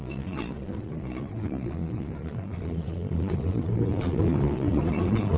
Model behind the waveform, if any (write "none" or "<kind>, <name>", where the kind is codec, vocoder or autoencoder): vocoder, Vocos